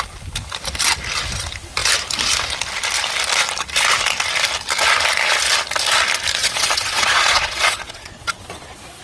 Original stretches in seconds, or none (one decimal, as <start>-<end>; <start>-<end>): 0.0-6.4

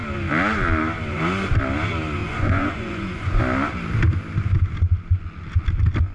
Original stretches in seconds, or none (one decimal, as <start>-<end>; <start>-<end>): 0.0-2.2; 3.4-6.1

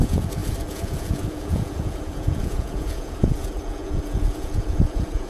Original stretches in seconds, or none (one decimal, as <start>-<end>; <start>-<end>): none